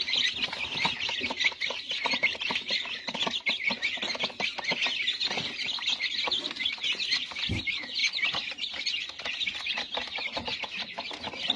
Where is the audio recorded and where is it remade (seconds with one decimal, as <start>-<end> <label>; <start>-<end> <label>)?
0.0-11.6 recorded